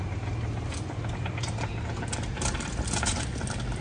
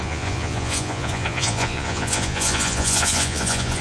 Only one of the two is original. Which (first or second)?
first